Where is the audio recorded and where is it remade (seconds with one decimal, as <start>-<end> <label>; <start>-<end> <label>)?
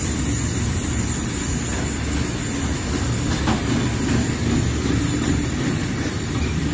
0.0-1.7 remade; 1.7-5.0 recorded; 5.0-6.7 remade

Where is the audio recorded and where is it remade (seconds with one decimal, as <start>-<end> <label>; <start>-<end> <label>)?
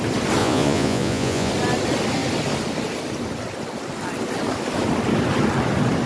0.0-0.4 recorded; 0.4-1.5 remade; 1.5-6.1 recorded